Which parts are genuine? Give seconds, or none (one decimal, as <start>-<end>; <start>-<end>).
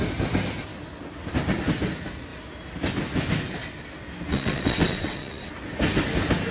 0.0-4.3; 5.5-6.5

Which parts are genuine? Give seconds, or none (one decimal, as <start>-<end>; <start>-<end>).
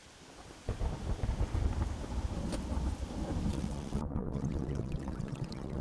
0.0-3.5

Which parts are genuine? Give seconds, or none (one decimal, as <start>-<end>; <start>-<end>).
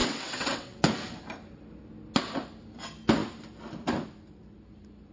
0.8-5.1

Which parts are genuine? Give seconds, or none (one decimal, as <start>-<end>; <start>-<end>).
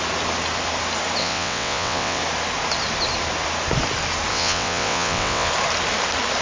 0.0-1.2; 2.2-4.3; 5.5-6.4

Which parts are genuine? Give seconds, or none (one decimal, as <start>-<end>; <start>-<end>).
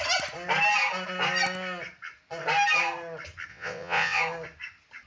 0.0-3.5; 4.2-5.1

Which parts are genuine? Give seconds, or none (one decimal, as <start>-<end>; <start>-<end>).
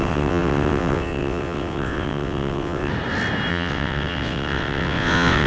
2.9-3.5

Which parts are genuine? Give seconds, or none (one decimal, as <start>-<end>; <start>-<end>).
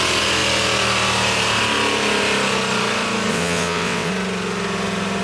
0.0-3.3; 4.1-5.2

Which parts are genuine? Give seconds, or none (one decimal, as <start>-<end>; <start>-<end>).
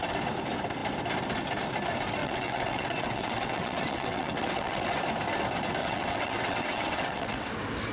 0.0-2.2; 4.9-5.8; 7.5-7.9